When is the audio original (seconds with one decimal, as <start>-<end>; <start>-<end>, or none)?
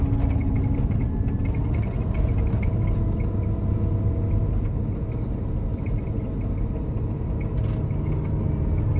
0.0-0.4; 2.2-9.0